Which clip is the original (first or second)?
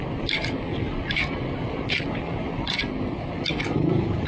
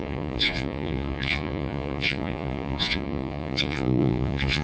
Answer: first